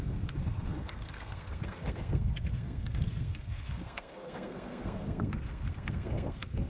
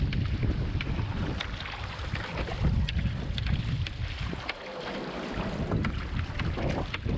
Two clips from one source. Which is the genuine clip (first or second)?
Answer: second